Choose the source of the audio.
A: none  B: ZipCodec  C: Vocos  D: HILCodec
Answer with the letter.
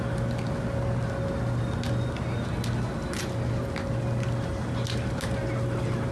A